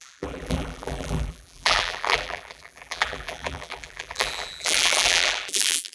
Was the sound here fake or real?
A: fake